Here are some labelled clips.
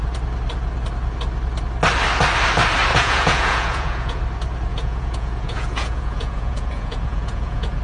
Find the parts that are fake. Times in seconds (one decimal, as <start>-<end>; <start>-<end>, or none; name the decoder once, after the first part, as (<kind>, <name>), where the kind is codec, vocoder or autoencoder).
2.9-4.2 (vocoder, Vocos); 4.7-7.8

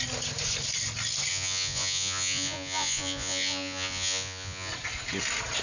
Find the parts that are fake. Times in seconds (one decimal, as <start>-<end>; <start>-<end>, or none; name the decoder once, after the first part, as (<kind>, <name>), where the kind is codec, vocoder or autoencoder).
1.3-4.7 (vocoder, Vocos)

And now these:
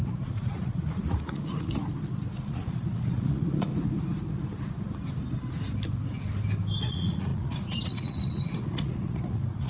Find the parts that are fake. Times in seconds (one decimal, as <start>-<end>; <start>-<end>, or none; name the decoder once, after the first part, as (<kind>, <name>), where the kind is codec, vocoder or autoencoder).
0.0-1.8 (vocoder, Vocos); 2.4-3.7; 6.8-9.7